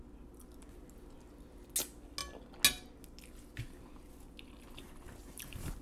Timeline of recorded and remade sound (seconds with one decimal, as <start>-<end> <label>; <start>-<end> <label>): 0.0-5.8 recorded